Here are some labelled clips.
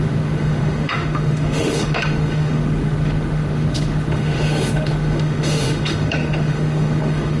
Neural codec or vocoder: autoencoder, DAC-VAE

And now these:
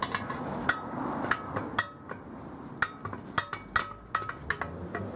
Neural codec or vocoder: none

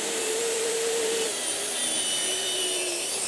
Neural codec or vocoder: vocoder, BigVGAN v2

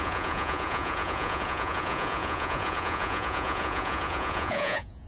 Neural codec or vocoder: vocoder, Vocos